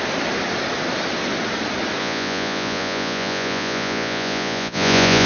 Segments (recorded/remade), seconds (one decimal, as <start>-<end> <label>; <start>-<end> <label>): 0.0-2.0 recorded; 2.0-5.3 remade